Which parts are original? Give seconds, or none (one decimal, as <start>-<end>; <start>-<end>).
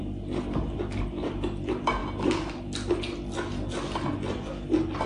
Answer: 0.0-5.1